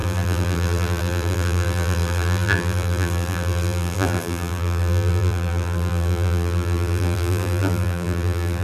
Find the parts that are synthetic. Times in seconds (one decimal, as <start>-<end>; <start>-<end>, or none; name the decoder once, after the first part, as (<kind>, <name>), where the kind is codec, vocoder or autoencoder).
0.0-8.6 (vocoder, BigVGAN v2)